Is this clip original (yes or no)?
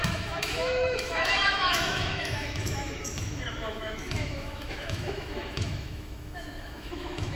no